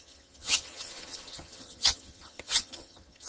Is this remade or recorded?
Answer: remade